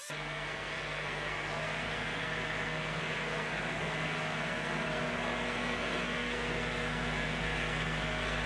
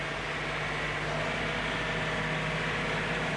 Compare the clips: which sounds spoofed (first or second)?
first